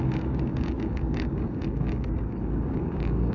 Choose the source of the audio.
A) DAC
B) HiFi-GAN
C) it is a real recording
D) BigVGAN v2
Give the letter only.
A